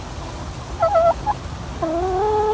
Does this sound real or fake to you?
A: real